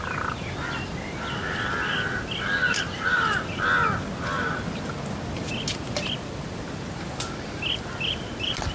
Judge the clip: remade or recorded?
recorded